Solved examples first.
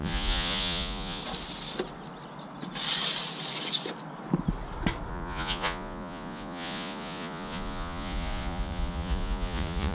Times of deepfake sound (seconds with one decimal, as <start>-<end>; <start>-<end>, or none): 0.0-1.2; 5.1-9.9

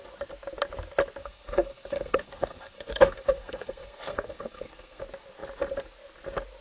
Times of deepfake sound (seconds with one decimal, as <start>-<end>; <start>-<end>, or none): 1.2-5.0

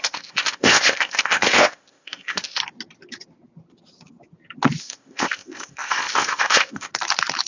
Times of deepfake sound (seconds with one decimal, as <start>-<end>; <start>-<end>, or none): 0.0-2.6; 4.8-6.9

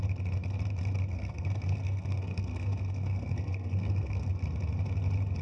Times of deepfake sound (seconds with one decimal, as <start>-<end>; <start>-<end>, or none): 1.1-4.3

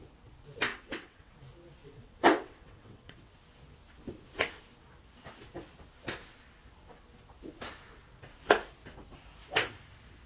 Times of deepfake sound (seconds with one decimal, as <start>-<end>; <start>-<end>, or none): 0.7-1.3; 1.8-3.3

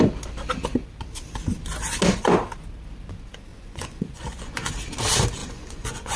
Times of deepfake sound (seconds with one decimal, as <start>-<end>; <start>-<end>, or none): 3.5-4.7; 5.4-6.2

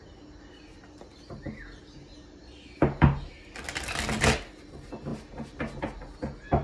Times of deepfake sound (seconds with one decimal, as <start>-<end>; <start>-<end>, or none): none

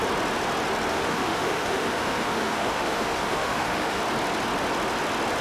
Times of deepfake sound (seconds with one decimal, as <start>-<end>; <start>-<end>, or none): 0.9-4.0